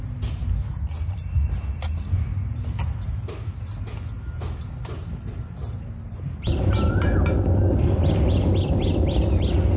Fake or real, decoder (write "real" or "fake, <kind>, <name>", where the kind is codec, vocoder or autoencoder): real